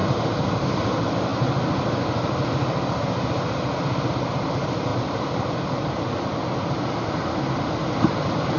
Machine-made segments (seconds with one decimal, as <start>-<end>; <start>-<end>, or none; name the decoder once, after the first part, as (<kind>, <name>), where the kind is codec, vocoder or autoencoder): none